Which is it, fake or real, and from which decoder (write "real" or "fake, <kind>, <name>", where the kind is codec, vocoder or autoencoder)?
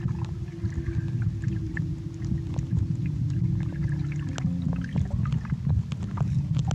real